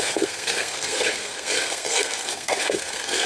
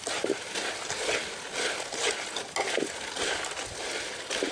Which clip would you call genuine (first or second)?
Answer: second